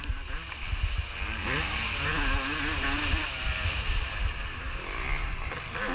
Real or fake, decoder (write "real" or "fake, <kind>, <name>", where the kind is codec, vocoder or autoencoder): real